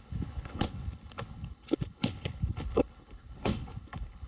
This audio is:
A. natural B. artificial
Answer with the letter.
B